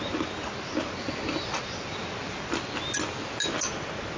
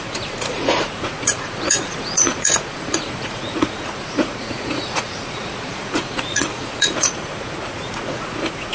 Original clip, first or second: first